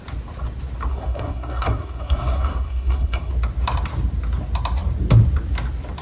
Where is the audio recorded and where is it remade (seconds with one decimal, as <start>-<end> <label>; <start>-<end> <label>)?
0.0-0.9 recorded; 0.9-3.3 remade; 3.3-6.0 recorded